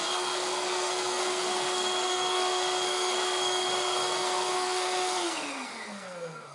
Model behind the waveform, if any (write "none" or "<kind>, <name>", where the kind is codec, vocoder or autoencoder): codec, SNAC